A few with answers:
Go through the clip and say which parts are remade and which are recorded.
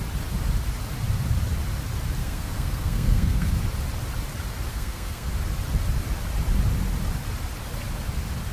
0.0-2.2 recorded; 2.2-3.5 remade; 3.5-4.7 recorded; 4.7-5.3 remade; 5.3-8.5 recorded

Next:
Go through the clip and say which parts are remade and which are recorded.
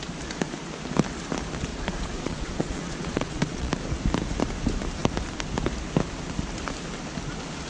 0.0-1.7 recorded; 1.7-3.7 remade; 3.7-7.7 recorded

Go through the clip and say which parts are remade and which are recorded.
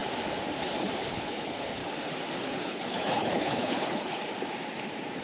0.0-1.1 recorded; 1.1-1.8 remade; 1.8-2.4 recorded; 2.4-4.3 remade; 4.3-5.2 recorded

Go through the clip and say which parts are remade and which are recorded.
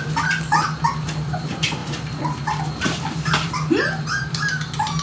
0.0-5.0 recorded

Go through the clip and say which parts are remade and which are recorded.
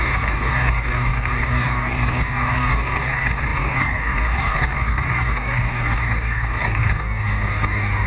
0.0-8.1 remade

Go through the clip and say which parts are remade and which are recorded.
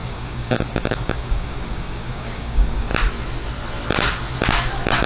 0.0-2.9 remade; 2.9-5.1 recorded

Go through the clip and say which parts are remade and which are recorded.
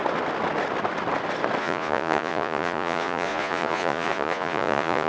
0.0-1.6 recorded; 1.6-5.1 remade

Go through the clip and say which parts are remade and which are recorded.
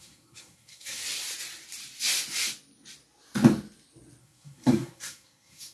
0.0-1.0 remade; 1.0-4.2 recorded; 4.2-5.7 remade